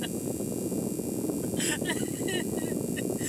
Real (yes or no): yes